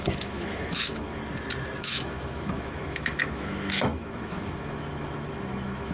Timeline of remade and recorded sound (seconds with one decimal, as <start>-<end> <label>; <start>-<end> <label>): 0.0-1.2 remade; 1.2-1.8 recorded; 1.8-5.9 remade